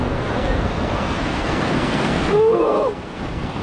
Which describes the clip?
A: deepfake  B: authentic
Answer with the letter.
A